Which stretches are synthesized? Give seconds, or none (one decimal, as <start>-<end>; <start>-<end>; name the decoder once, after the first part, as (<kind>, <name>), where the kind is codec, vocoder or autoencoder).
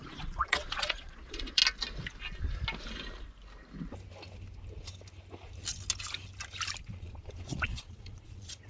0.0-1.6 (vocoder, Vocos); 6.8-8.7